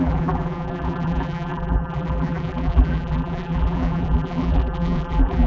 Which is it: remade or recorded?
remade